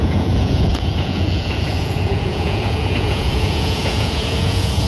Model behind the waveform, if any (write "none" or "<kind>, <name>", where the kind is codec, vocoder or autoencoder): vocoder, Vocos